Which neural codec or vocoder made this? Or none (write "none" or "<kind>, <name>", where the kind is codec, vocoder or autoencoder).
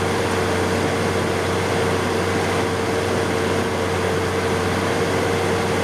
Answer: none